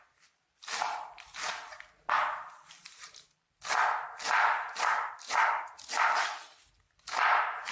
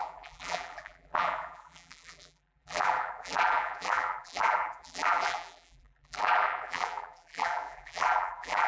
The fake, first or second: second